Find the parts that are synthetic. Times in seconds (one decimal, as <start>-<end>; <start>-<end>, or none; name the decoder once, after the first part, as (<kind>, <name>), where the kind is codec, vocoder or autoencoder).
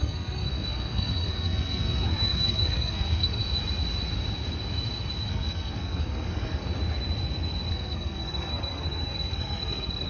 0.0-3.4 (codec, SNAC); 5.3-6.6; 7.7-10.1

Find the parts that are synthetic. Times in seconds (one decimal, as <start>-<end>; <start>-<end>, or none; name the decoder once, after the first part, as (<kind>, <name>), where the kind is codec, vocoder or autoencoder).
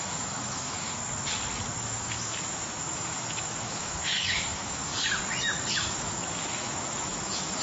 0.0-1.0 (autoencoder, DAC-VAE); 1.8-4.9; 5.7-7.6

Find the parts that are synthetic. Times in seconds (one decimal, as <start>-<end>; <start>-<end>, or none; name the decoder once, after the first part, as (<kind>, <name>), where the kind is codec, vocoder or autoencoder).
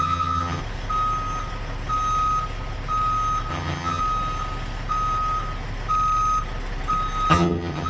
0.0-0.6 (vocoder, HiFi-GAN); 3.5-4.0; 7.3-7.9